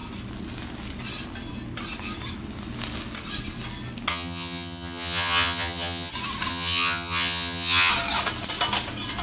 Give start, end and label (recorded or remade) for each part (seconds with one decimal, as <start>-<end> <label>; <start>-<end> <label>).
0.0-4.1 recorded; 4.1-6.1 remade; 6.1-6.5 recorded; 6.5-7.9 remade; 7.9-9.2 recorded